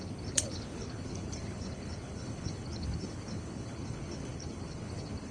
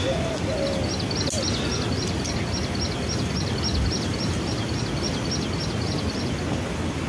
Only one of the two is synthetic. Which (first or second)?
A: first